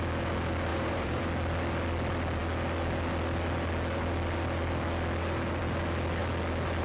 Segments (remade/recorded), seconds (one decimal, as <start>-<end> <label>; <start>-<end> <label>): 0.0-0.7 recorded; 0.7-1.2 remade; 1.2-6.8 recorded